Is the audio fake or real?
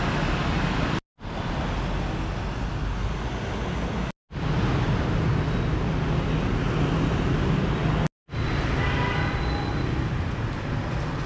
real